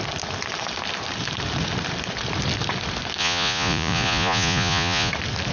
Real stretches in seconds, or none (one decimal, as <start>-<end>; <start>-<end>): 0.0-3.2; 5.1-5.5